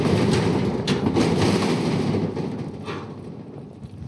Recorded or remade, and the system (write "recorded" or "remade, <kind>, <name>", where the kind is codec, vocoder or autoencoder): recorded